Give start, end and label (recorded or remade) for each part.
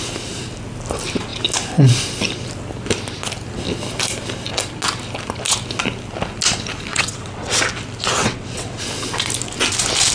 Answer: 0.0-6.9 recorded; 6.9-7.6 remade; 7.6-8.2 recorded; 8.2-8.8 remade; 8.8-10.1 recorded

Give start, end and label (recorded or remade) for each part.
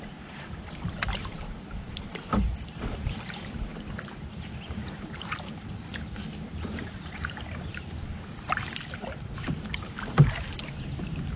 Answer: 0.0-11.4 remade